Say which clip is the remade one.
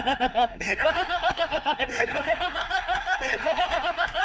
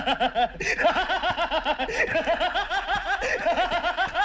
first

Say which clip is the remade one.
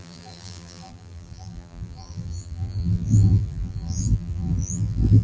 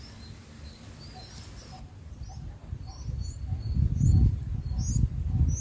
first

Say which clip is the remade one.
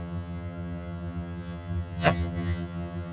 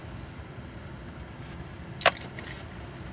first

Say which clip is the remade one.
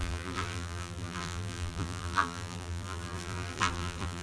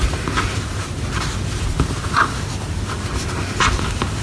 first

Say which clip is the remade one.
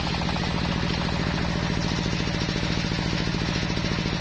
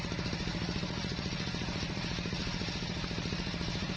second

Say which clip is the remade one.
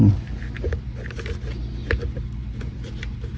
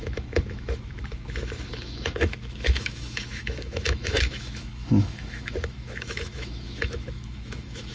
second